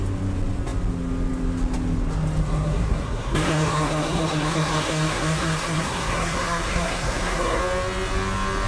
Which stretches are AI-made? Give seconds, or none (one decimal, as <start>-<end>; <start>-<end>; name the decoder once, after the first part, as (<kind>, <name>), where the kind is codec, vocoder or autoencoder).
2.4-7.6 (codec, SNAC)